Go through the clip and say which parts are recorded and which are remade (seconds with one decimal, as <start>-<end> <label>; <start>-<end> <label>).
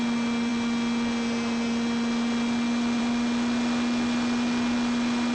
0.0-5.3 recorded